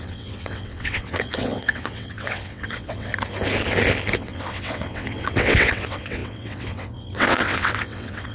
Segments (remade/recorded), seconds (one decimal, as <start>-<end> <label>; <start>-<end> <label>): 0.0-3.1 remade; 3.1-4.1 recorded; 4.1-8.3 remade